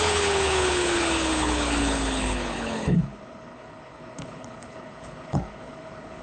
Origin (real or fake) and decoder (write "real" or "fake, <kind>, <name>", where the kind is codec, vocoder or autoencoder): fake, codec, HILCodec